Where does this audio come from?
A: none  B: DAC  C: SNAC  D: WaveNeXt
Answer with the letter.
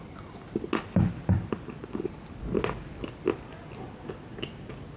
A